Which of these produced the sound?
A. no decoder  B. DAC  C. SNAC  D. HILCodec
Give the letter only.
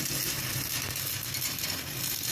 A